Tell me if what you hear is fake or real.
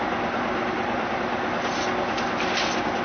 real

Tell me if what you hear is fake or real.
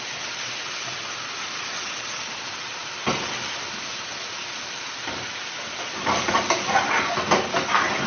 real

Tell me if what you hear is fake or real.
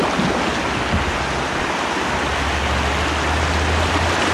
real